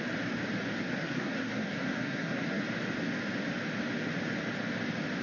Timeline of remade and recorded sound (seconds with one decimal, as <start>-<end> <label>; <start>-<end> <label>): 0.0-0.8 recorded; 0.8-2.6 remade; 2.6-5.2 recorded